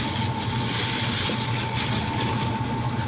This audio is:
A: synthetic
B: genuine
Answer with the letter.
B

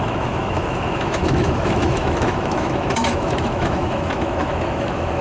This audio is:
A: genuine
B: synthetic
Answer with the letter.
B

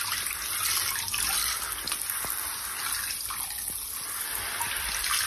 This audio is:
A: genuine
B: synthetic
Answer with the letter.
A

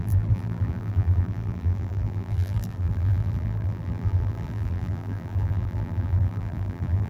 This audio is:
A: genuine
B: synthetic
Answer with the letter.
B